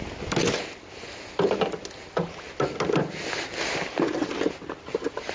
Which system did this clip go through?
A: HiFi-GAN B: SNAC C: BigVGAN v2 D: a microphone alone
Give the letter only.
D